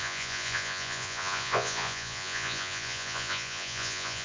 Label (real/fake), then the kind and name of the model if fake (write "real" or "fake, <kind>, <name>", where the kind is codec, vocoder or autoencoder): fake, vocoder, Vocos